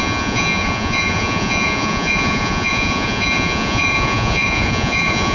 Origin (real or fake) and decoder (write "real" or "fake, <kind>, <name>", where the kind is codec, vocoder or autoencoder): fake, vocoder, Vocos